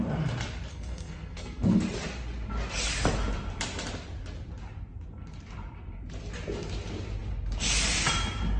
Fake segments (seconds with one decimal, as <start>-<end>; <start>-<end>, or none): 0.7-1.8